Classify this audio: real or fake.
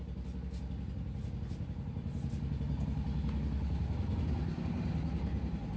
real